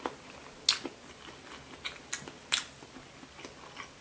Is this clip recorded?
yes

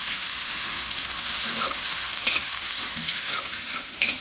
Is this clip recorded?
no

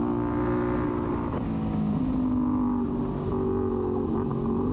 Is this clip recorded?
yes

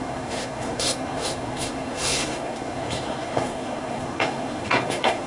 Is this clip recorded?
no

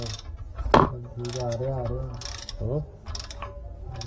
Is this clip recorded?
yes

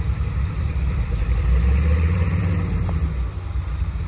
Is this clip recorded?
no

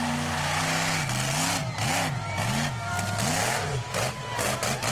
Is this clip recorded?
yes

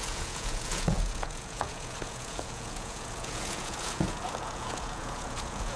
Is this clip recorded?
no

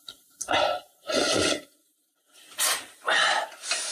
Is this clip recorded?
yes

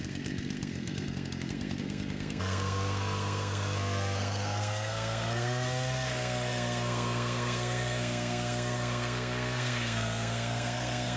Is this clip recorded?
no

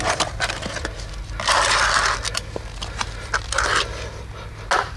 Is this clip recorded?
yes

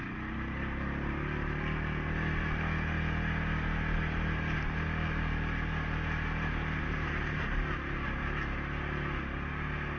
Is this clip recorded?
yes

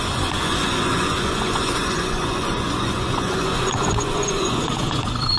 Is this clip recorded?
no